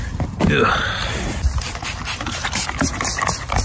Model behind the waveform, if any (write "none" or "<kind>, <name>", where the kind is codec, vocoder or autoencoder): none